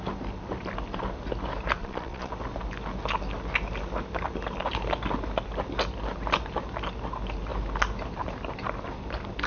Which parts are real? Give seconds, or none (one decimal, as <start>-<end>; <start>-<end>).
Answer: 0.0-1.8; 2.3-9.5